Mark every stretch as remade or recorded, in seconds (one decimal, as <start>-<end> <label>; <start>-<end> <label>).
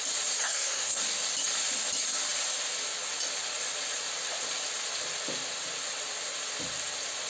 0.0-0.4 recorded; 0.4-1.0 remade; 1.0-7.3 recorded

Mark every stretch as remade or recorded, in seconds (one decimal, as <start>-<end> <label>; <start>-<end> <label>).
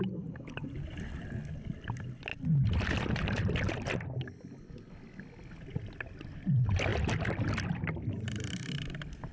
0.0-9.3 recorded